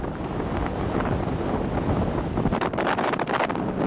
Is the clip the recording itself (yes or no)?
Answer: yes